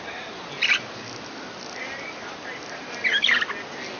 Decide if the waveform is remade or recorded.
recorded